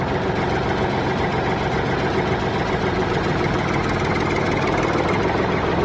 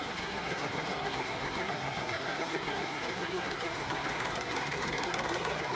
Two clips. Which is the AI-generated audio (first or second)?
second